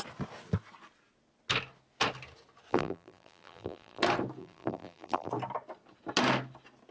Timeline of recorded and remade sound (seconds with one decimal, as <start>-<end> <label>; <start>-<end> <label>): 0.0-2.7 recorded; 2.7-4.0 remade; 4.0-4.4 recorded; 4.4-5.3 remade; 5.3-6.9 recorded